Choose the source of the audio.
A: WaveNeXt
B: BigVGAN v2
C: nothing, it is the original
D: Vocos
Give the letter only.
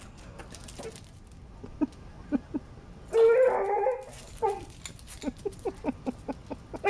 C